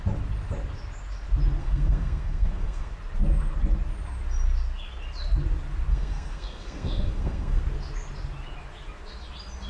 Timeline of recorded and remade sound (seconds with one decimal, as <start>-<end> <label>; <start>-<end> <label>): 0.0-1.6 recorded; 1.6-2.9 remade; 2.9-5.9 recorded; 5.9-7.6 remade; 7.6-9.7 recorded